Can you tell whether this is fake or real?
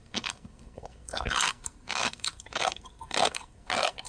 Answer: fake